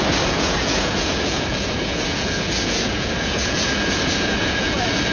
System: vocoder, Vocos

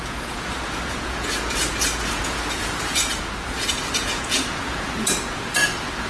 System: vocoder, Vocos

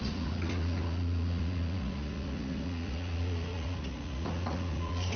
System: vocoder, Vocos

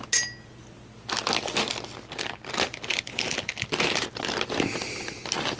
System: none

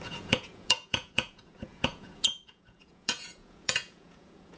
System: vocoder, Vocos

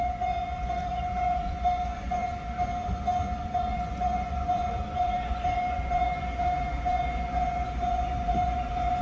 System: vocoder, Vocos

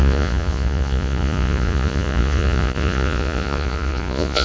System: vocoder, Vocos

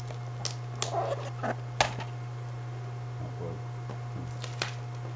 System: none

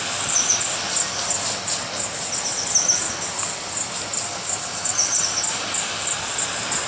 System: none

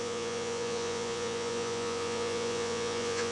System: vocoder, Vocos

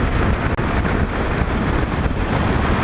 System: none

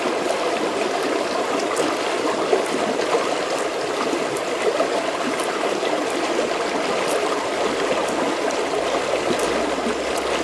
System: none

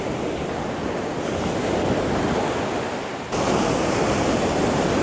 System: none